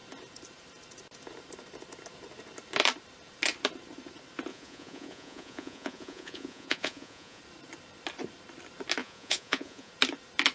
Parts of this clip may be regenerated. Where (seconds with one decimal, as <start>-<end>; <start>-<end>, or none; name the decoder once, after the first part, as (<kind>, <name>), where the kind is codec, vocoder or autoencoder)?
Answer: 4.5-7.4 (vocoder, Vocos); 9.0-9.9